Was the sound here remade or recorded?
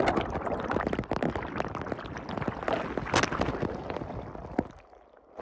recorded